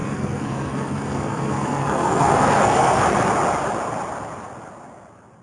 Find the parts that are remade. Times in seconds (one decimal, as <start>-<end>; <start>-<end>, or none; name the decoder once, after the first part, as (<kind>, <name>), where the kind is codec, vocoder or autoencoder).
0.0-3.0 (codec, SNAC)